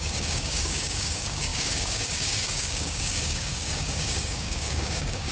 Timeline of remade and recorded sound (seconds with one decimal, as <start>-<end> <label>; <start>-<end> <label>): 0.0-5.3 remade